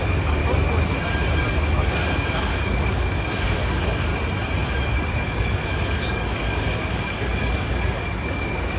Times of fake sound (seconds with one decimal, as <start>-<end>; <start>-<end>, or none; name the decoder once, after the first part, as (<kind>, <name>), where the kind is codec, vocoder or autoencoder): 0.0-0.4 (codec, DAC); 1.4-4.1; 4.9-8.8